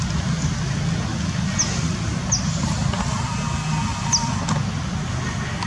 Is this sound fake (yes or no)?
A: no